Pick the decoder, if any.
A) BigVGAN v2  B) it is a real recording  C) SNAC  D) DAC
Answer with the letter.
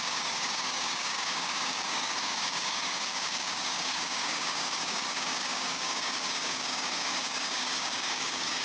D